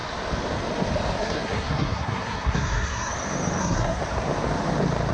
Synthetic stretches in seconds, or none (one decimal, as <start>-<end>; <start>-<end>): 1.2-3.1; 3.6-4.0